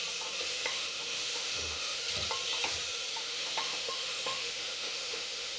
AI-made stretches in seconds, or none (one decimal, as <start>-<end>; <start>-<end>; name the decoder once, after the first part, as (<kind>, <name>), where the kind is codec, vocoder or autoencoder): 0.5-2.0 (autoencoder, DAC-VAE); 3.1-5.6